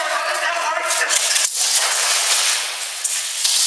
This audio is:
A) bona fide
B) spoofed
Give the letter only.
B